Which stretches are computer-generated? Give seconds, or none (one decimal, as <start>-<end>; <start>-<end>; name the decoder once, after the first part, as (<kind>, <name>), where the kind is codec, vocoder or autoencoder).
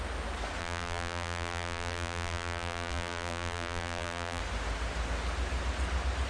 0.6-4.4 (vocoder, BigVGAN v2)